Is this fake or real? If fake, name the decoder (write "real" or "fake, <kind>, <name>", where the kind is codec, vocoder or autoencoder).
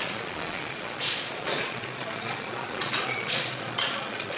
fake, vocoder, Vocos